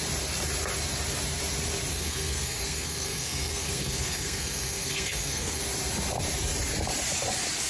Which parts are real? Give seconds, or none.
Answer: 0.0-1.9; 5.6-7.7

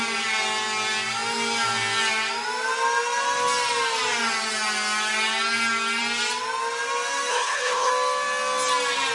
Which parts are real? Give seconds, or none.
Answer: 0.0-7.3; 7.9-9.1